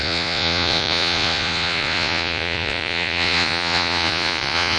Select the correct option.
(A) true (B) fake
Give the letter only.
B